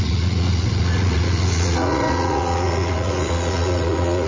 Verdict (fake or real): fake